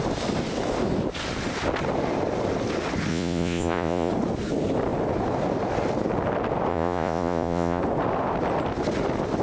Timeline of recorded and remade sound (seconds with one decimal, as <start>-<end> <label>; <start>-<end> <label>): 0.0-3.1 recorded; 3.1-4.1 remade; 4.1-6.7 recorded; 6.7-7.8 remade; 7.8-9.4 recorded

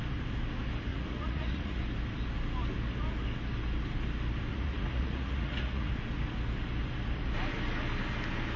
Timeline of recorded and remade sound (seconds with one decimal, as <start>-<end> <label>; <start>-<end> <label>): 0.0-0.9 recorded; 0.9-1.8 remade; 1.8-4.5 recorded; 4.5-5.9 remade; 5.9-8.6 recorded

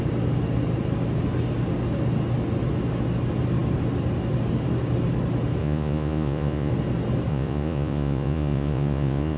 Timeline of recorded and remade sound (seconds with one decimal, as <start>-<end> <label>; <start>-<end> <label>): 0.0-5.6 recorded; 5.6-6.7 remade; 6.7-7.3 recorded; 7.3-9.4 remade

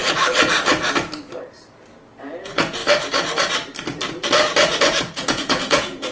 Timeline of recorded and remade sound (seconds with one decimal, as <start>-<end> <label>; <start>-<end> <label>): 0.0-2.4 recorded; 2.4-2.8 remade; 2.8-5.0 recorded; 5.0-6.1 remade

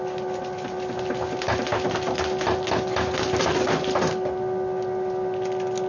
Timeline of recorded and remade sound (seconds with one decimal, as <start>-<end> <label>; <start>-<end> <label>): 0.0-5.9 recorded

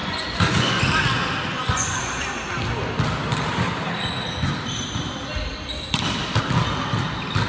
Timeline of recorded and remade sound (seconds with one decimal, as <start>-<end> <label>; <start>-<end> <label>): 0.0-0.8 remade; 0.8-1.5 recorded; 1.5-2.1 remade; 2.1-7.5 recorded

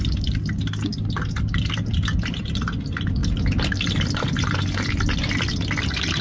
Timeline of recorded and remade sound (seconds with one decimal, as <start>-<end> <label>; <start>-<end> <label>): 0.0-6.2 recorded